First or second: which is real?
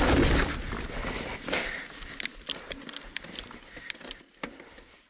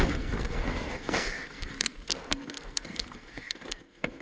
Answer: first